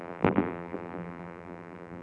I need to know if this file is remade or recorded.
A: remade